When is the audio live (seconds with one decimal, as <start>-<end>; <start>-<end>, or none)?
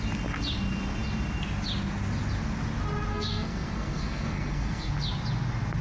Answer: 0.0-3.1; 4.9-5.8